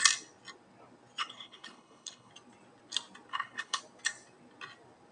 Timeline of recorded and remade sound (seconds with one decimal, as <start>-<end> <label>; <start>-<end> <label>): 0.0-1.2 recorded; 1.2-2.3 remade; 2.3-3.3 recorded; 3.3-3.8 remade; 3.8-5.1 recorded